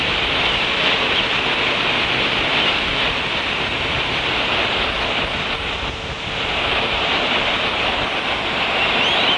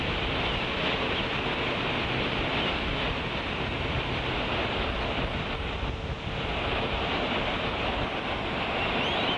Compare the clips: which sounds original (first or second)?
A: second